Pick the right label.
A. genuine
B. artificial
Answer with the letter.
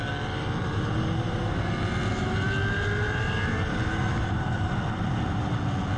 A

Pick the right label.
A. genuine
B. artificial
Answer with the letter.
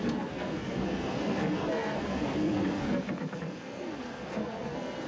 B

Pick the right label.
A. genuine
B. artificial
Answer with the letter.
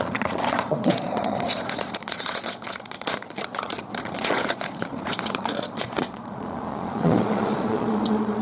B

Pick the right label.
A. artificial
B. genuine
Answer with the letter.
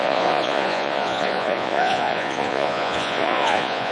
A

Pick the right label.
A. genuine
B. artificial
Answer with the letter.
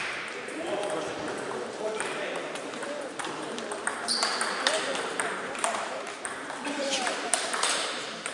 B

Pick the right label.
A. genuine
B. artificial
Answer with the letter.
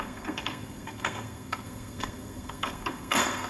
B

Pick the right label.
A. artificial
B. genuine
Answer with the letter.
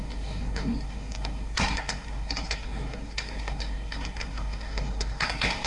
A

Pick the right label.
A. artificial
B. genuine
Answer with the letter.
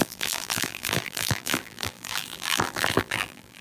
A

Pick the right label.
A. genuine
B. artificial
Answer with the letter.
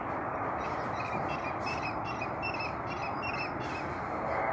A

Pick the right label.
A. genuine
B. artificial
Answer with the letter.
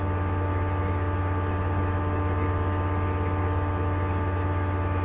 A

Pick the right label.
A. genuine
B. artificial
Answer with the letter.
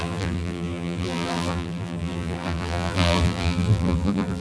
B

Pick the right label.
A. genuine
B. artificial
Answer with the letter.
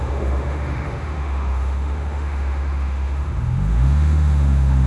B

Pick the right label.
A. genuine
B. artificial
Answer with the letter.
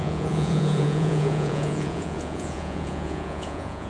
B